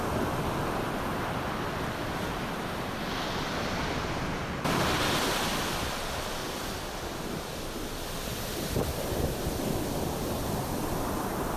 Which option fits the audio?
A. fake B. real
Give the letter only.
B